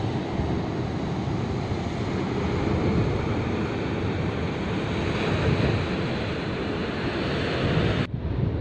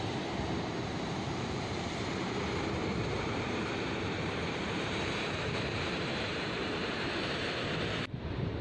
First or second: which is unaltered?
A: first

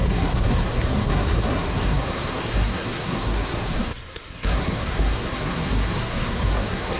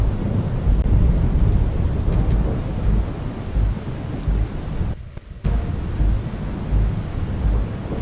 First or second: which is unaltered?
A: second